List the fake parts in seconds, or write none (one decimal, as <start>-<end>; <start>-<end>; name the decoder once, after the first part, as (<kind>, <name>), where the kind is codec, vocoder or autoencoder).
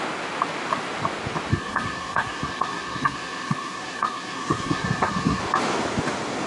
1.5-5.4 (codec, SNAC)